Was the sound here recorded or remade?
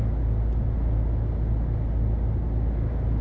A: recorded